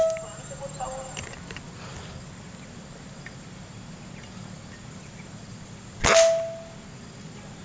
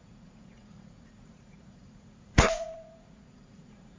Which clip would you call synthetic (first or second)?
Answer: second